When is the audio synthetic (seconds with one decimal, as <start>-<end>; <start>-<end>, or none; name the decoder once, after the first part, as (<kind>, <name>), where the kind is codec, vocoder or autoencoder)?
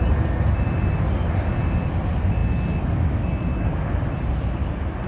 none